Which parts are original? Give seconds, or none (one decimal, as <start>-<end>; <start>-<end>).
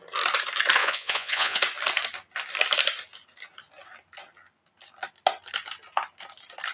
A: 0.0-0.8; 1.6-6.7